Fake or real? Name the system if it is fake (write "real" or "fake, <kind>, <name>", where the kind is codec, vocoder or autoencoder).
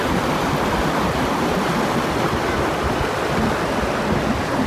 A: real